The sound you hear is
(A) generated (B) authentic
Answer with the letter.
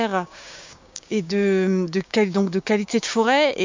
A